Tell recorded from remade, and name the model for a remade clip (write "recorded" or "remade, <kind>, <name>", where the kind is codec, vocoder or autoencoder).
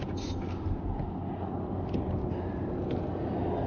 recorded